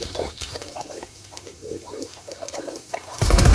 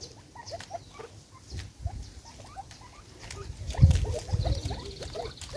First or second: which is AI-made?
first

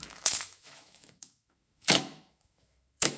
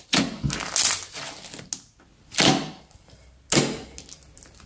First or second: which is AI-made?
first